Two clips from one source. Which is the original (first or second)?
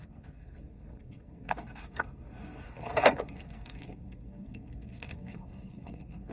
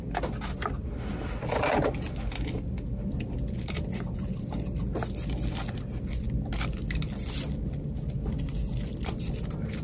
second